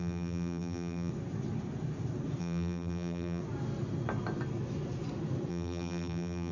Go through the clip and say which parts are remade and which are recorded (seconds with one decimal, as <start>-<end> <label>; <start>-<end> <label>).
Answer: 0.0-1.1 remade; 1.1-2.4 recorded; 2.4-3.4 remade; 3.4-5.5 recorded; 5.5-6.5 remade